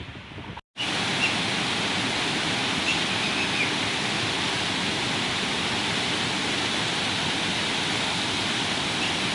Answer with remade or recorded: recorded